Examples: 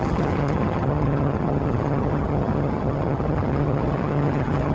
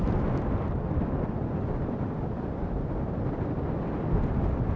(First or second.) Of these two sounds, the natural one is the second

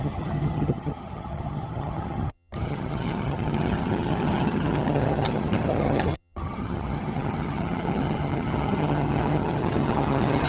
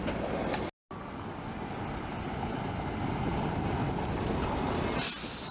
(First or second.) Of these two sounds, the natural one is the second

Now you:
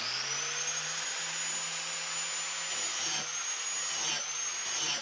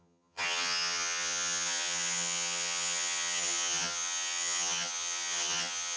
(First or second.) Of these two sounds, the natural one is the first